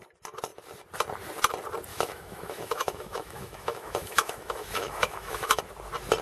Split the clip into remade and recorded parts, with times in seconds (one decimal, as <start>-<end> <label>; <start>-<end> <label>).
0.0-1.9 recorded; 1.9-5.6 remade; 5.6-6.2 recorded